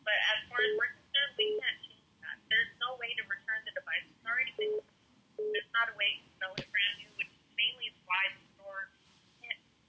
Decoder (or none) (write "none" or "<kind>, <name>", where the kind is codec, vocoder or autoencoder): none